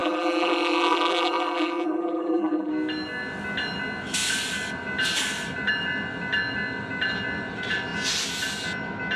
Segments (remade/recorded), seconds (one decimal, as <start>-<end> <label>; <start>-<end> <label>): 0.0-2.7 remade; 2.7-9.2 recorded